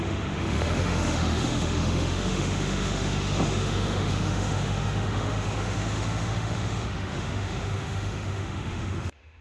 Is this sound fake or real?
fake